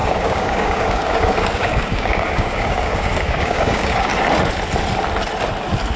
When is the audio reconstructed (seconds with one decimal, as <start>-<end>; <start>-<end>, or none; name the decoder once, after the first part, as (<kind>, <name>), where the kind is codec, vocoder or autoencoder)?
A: 0.0-4.1 (codec, DAC)